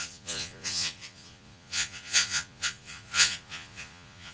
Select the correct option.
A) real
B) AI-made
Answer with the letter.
B